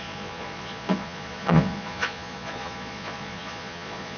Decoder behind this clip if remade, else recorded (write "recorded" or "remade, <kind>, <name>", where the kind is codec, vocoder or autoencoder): remade, vocoder, Vocos